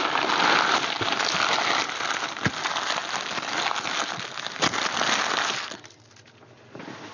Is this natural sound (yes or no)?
yes